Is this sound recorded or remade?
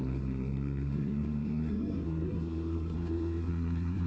remade